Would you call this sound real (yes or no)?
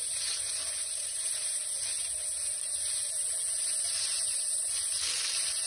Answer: no